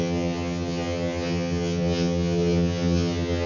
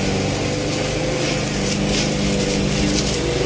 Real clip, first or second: second